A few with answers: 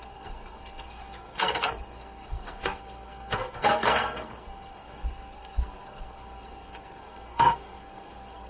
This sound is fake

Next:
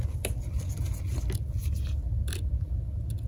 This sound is real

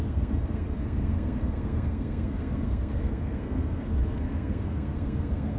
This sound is fake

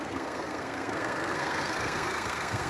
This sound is fake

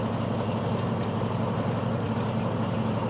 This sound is real